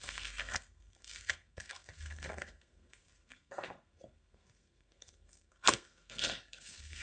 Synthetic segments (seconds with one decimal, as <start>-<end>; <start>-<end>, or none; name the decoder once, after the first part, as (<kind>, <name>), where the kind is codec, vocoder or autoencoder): 0.0-7.0 (codec, SNAC)